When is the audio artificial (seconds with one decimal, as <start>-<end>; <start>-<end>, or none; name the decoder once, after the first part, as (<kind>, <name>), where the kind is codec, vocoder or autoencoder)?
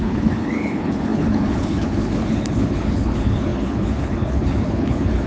0.0-5.3 (codec, HILCodec)